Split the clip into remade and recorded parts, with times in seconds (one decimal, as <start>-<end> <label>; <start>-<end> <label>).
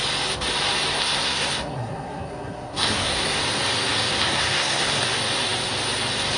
0.0-0.9 recorded; 0.9-3.4 remade; 3.4-4.1 recorded; 4.1-5.0 remade; 5.0-6.4 recorded